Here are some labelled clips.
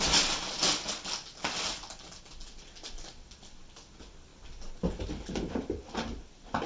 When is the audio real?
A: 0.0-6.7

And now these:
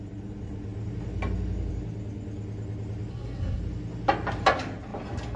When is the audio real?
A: 0.0-3.1; 3.6-5.4

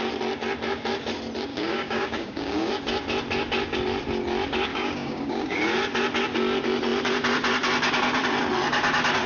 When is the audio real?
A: 0.0-1.5; 2.7-4.7; 5.6-9.3

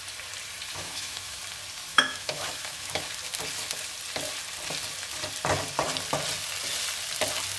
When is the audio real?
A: 0.0-0.7; 1.4-1.9; 3.0-7.6

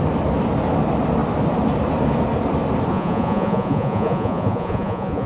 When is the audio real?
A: 0.0-2.9

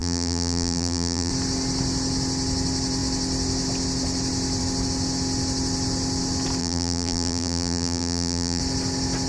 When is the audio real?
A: 1.3-6.6; 8.6-9.3

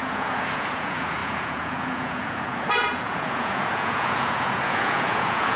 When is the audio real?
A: none

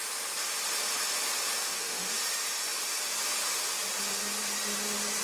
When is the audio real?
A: 0.0-1.6; 2.1-5.2